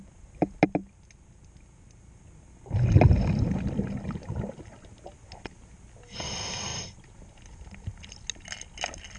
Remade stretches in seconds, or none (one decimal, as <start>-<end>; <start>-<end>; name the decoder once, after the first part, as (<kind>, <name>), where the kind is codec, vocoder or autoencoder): none